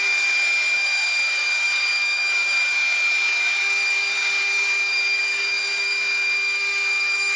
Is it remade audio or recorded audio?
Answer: remade